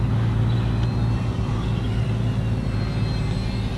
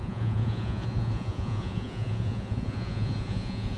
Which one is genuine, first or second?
first